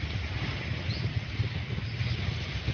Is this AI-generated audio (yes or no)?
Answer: no